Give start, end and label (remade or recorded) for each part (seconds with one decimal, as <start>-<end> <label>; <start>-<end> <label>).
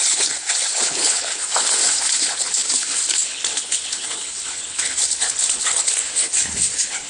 0.0-7.1 remade